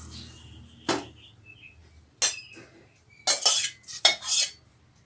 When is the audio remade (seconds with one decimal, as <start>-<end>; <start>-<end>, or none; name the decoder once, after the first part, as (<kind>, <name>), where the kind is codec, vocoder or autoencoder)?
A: none